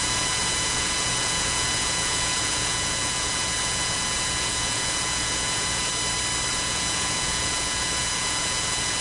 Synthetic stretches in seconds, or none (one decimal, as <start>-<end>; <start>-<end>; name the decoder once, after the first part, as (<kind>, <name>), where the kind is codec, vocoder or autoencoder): 0.0-5.9 (vocoder, Vocos); 6.5-9.0